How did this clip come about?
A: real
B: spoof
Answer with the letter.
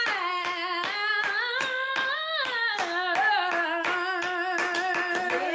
A